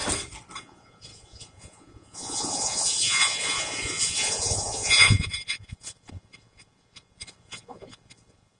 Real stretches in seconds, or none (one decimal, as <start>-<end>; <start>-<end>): 0.0-0.6